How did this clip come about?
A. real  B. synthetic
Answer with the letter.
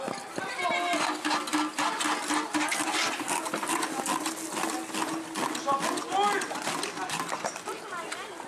A